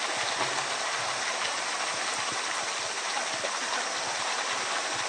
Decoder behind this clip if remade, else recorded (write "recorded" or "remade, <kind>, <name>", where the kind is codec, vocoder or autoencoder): recorded